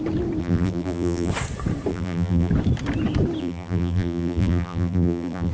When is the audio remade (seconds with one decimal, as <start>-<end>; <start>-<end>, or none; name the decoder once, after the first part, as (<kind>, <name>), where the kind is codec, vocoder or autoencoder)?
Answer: 0.4-1.3 (vocoder, BigVGAN v2); 1.9-2.5; 3.4-5.5